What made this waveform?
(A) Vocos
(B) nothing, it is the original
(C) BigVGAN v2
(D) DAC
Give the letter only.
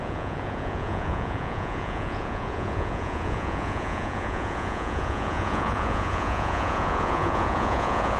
A